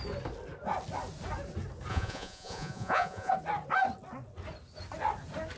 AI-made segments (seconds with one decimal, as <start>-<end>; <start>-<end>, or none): 1.9-3.3